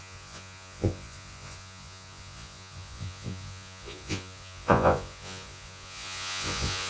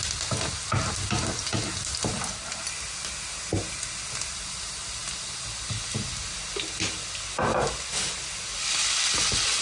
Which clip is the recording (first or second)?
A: second